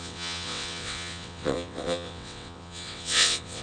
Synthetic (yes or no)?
yes